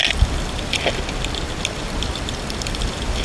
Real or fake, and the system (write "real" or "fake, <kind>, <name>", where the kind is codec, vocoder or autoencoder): real